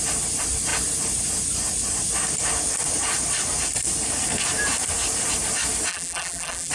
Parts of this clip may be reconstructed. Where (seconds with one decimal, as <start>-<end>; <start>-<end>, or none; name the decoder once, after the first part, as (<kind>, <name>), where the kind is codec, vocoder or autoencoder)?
5.9-6.7 (vocoder, BigVGAN v2)